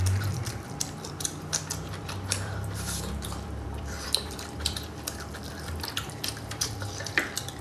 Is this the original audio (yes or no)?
no